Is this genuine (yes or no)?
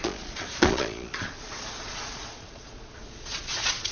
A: no